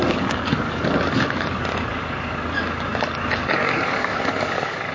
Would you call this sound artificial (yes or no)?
yes